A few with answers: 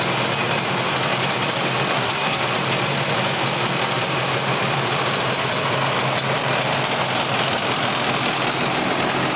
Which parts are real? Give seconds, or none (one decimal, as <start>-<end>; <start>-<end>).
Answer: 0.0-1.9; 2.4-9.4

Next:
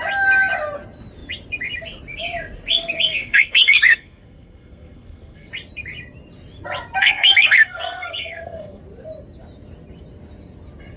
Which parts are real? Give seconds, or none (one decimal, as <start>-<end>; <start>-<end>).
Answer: 0.0-2.7; 5.5-7.0; 8.8-11.0

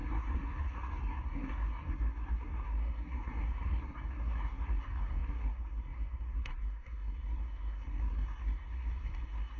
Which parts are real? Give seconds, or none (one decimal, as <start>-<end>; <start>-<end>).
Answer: none

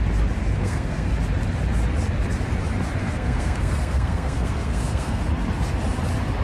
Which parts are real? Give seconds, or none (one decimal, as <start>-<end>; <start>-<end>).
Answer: 0.0-0.6; 1.1-3.0; 5.2-6.4